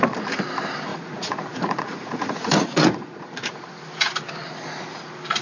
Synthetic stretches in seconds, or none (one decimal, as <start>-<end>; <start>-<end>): 0.9-3.7

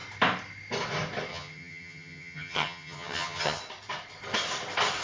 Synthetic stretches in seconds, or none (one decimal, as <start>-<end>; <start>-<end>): 1.3-3.6